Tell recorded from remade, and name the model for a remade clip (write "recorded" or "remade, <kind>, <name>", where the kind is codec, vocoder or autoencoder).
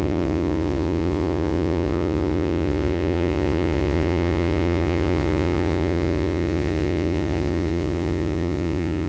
remade, vocoder, Vocos